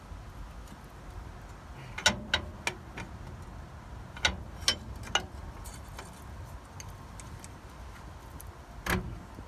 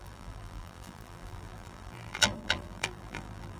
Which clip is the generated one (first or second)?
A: second